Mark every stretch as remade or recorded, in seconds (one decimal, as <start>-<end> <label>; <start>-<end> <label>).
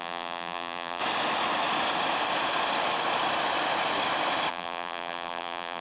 0.0-1.0 remade; 1.0-4.5 recorded; 4.5-5.8 remade